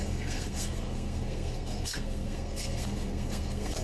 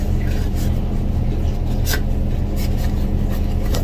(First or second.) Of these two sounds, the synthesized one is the first